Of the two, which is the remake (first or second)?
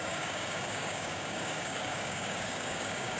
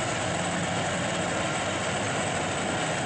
first